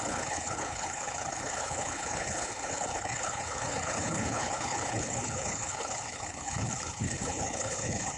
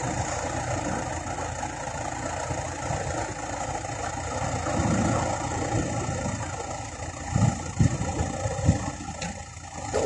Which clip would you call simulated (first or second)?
first